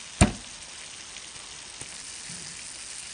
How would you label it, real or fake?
real